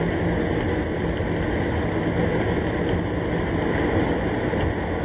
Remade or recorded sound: recorded